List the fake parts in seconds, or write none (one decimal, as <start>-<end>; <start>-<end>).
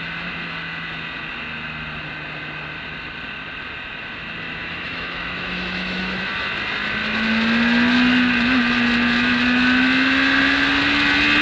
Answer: 4.6-6.2